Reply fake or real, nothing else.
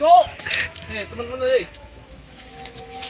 fake